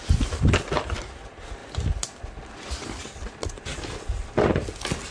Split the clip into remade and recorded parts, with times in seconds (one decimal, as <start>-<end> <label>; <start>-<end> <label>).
0.0-5.1 recorded